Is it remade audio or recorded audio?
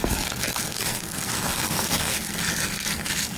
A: remade